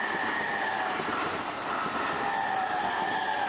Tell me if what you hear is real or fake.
real